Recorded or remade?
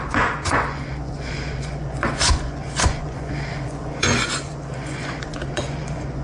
remade